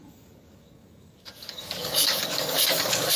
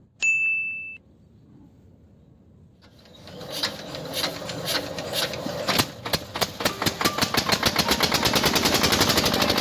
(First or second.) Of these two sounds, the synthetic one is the first